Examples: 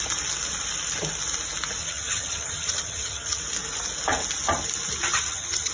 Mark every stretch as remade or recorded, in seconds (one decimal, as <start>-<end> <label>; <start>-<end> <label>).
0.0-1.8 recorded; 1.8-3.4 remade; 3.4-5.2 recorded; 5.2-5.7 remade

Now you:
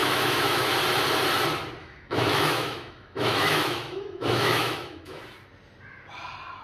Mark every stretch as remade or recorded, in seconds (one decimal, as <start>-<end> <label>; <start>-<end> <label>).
0.0-0.7 remade; 0.7-1.8 recorded; 1.8-5.2 remade; 5.2-6.6 recorded

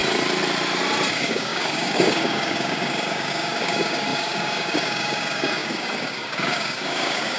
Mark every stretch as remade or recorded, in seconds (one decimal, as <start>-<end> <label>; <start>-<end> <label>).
0.0-1.1 recorded; 1.1-7.4 remade